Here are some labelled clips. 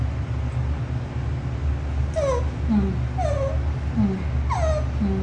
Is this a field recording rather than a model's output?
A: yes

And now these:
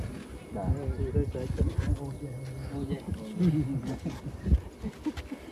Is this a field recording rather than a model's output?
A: yes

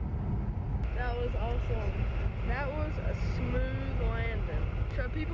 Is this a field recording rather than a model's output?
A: yes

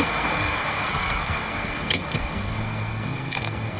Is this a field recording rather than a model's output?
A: no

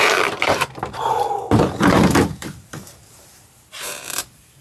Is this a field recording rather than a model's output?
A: no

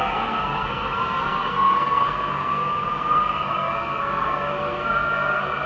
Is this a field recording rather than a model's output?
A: no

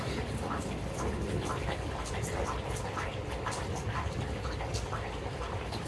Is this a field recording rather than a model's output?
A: yes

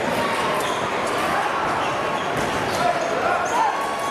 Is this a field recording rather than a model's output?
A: yes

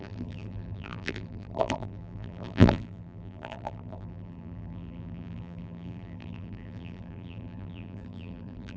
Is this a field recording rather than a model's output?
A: no